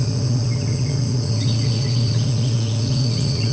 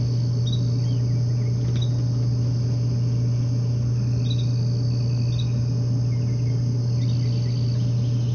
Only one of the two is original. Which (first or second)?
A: second